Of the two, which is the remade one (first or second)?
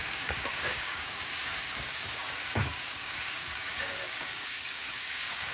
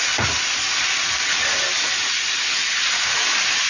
first